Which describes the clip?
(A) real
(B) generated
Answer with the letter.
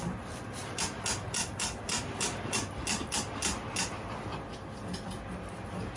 A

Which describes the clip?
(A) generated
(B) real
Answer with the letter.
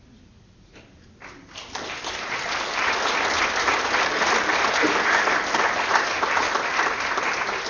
B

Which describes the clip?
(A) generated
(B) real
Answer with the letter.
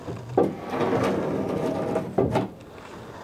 B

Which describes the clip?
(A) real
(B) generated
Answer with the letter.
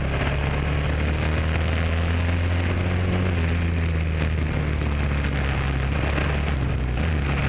A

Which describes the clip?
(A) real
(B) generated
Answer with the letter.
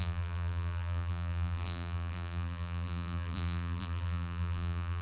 B